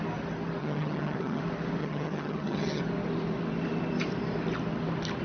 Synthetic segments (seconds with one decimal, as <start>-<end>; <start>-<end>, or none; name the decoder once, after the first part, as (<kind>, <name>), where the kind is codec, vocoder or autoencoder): 0.6-1.4 (vocoder, HiFi-GAN); 1.8-2.8